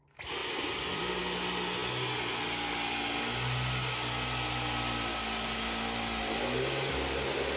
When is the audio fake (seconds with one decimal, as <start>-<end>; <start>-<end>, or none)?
none